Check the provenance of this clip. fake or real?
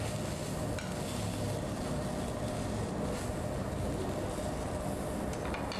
real